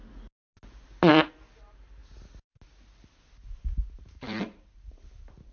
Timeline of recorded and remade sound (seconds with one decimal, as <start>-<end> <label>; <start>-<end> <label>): 0.0-1.1 recorded; 1.1-2.0 remade; 2.0-4.0 recorded; 4.0-5.5 remade